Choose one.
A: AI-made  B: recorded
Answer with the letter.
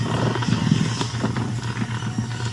B